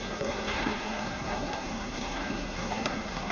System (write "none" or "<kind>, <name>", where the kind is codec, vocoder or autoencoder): codec, SNAC